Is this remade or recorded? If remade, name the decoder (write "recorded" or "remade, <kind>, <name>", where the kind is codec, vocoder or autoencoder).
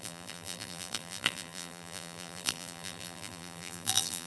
remade, vocoder, BigVGAN v2